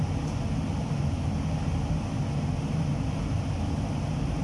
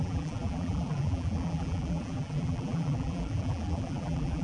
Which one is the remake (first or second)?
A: second